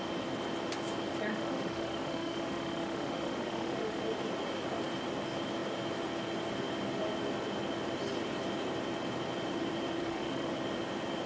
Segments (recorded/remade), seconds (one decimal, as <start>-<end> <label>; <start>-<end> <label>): 0.0-1.3 recorded; 1.3-4.0 remade; 4.0-10.0 recorded; 10.0-10.5 remade; 10.5-11.3 recorded